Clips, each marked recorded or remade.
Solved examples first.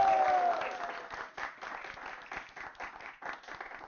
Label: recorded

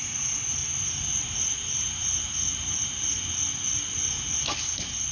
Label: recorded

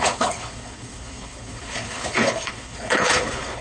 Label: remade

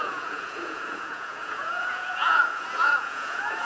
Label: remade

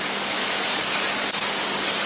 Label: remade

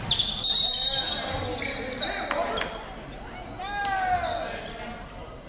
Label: recorded